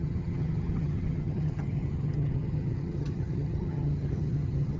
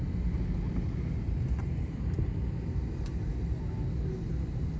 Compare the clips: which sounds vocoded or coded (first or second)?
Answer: first